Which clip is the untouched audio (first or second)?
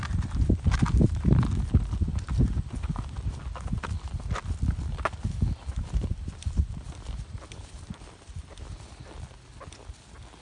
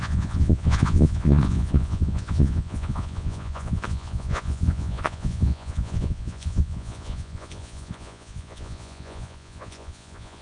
first